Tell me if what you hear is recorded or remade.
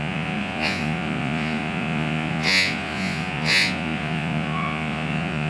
remade